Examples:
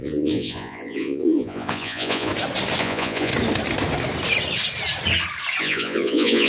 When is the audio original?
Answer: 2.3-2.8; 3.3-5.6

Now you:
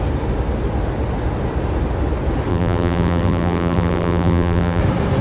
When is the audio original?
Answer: 0.0-2.5; 4.8-5.2

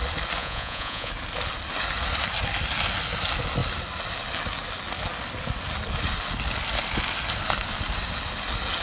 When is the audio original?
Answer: 0.0-0.4; 1.1-8.8

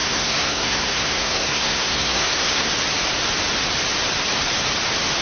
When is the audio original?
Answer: 2.7-5.2